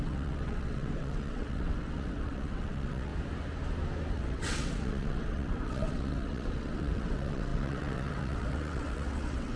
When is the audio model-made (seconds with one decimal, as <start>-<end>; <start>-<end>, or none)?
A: 0.0-3.1; 4.1-9.6

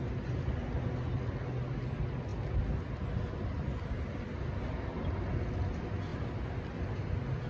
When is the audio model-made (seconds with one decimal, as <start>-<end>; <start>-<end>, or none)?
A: none